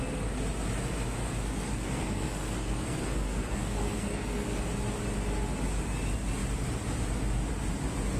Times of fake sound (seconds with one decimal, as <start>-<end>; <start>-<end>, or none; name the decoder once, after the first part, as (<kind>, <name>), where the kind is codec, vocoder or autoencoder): 1.2-4.6 (codec, SNAC)